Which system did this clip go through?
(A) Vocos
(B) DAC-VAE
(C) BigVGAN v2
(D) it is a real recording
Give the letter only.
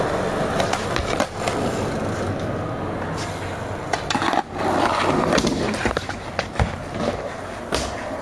D